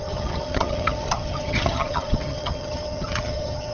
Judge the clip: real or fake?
fake